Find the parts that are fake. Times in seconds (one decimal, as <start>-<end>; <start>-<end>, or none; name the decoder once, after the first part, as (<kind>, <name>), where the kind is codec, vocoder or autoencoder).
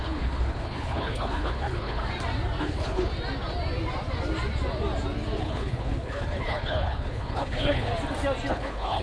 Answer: 0.0-2.0 (codec, HILCodec); 2.6-3.1; 5.4-7.9; 8.5-9.0